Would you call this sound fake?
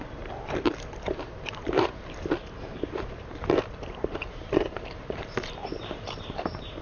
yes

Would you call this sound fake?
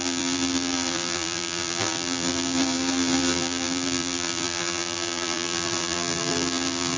yes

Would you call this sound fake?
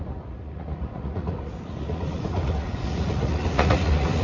yes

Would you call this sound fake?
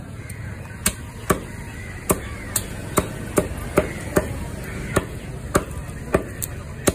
no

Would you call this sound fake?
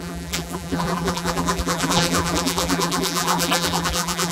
yes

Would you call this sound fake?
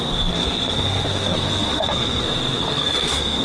yes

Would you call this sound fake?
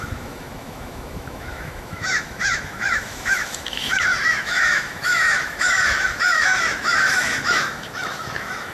yes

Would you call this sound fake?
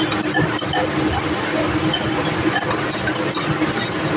no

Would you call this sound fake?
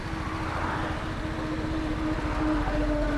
no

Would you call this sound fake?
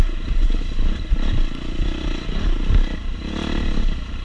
no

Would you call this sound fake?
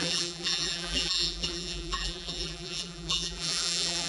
yes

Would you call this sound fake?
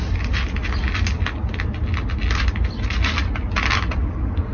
no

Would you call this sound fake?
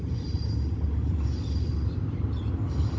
no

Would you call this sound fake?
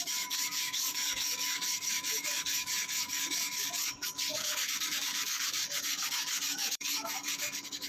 yes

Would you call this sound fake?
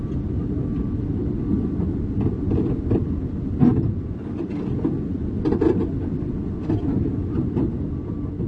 no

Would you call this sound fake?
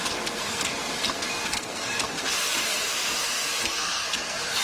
yes